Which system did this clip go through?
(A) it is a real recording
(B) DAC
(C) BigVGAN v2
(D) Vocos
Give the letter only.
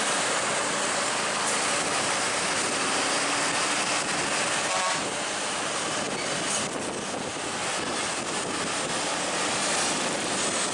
A